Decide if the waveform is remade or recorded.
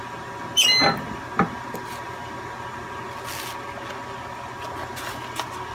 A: recorded